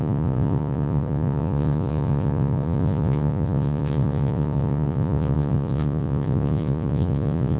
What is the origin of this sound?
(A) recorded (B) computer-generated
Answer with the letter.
B